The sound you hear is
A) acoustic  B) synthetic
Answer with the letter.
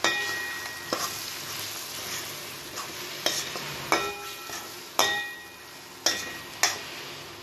A